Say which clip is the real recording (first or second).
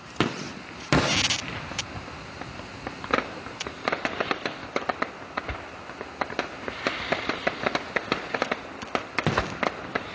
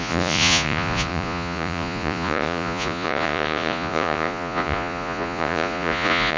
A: first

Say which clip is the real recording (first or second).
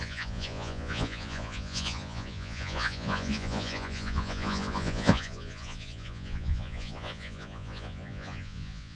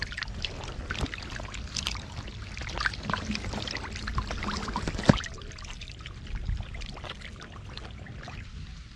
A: second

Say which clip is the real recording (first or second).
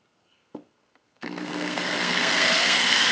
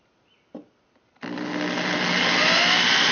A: second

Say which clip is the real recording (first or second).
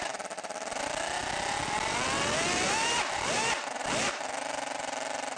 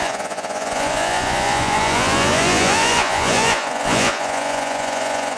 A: first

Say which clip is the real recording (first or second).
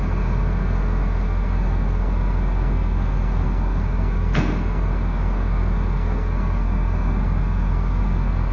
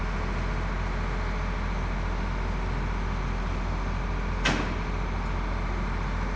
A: second